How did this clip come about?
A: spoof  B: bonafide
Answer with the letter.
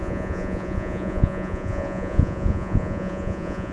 A